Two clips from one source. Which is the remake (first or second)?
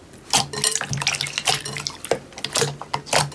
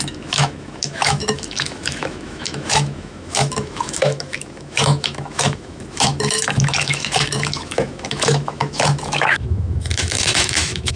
second